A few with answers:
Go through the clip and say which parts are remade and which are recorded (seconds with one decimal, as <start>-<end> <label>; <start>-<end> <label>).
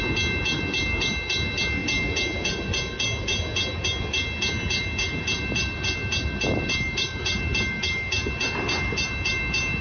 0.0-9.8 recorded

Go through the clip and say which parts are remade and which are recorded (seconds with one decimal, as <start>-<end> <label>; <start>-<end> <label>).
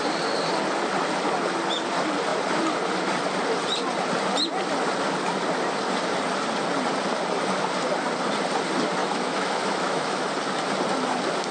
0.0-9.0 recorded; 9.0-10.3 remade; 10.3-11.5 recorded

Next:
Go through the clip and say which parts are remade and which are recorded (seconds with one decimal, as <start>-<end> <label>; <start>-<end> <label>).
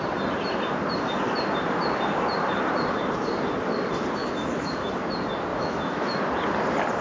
0.0-4.2 recorded; 4.2-4.9 remade; 4.9-5.5 recorded; 5.5-6.2 remade; 6.2-7.0 recorded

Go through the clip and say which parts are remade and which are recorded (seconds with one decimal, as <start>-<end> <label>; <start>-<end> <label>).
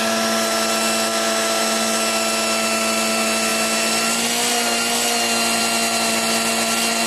0.0-7.1 recorded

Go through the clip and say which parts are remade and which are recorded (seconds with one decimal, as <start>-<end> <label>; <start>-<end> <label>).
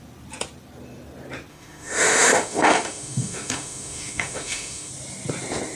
0.0-1.5 recorded; 1.5-4.9 remade; 4.9-5.7 recorded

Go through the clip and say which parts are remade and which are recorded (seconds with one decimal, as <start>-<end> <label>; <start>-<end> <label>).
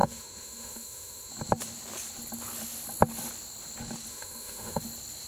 0.0-1.3 remade; 1.3-4.1 recorded; 4.1-4.8 remade; 4.8-5.3 recorded